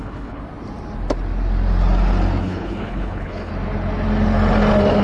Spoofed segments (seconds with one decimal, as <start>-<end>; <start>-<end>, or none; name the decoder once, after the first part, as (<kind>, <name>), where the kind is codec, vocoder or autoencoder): 0.0-0.4 (codec, HILCodec); 2.4-3.5